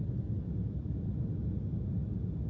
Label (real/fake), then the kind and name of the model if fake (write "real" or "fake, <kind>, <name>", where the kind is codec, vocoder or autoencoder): real